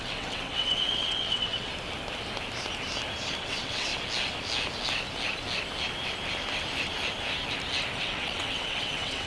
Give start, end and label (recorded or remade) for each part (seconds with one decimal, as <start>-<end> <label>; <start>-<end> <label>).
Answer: 0.0-1.7 remade; 1.7-3.4 recorded; 3.4-3.9 remade; 3.9-8.0 recorded; 8.0-9.3 remade